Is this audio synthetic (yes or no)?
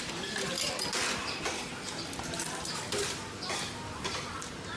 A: no